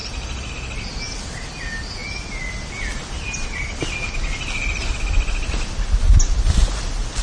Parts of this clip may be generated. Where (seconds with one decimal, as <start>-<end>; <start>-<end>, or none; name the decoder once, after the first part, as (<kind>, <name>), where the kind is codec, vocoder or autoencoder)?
0.0-1.0 (vocoder, BigVGAN v2)